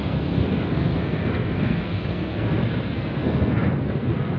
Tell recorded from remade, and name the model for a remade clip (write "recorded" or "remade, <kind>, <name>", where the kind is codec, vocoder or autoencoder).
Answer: remade, codec, SNAC